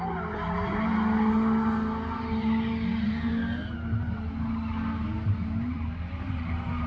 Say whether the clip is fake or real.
real